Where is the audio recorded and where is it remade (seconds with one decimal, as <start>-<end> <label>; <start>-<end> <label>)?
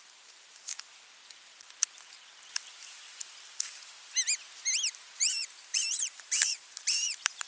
0.0-0.7 remade; 0.7-5.2 recorded; 5.2-7.5 remade